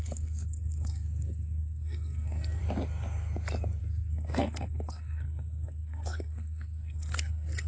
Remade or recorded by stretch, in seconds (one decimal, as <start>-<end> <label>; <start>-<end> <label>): 0.0-2.6 remade; 2.6-3.8 recorded; 3.8-7.7 remade